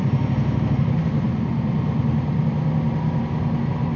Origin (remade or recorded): recorded